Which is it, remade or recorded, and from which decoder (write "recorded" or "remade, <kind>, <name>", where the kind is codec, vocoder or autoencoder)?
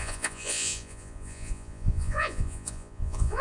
remade, vocoder, Vocos